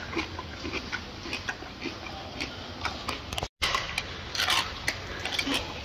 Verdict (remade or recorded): recorded